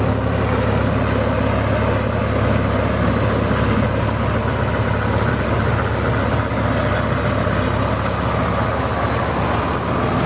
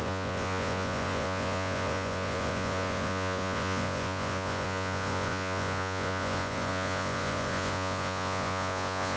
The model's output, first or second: second